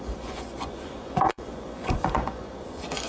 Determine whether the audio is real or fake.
fake